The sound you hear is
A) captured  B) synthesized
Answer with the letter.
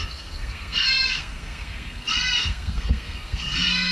B